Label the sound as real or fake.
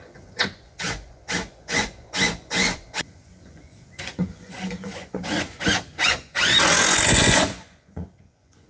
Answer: fake